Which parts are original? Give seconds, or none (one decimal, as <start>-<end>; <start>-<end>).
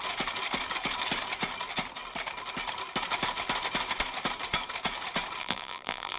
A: 0.0-5.4